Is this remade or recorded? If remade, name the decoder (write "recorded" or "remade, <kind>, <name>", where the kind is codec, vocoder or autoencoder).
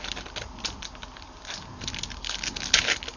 recorded